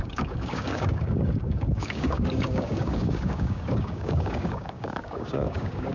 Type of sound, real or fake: fake